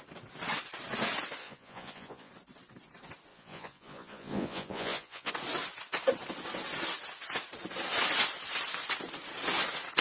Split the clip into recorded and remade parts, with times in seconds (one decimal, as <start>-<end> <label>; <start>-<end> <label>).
0.0-1.4 recorded; 1.4-2.3 remade; 2.3-3.3 recorded; 3.3-5.3 remade; 5.3-10.0 recorded